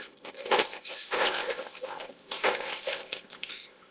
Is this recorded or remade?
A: remade